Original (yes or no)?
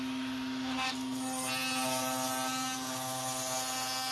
yes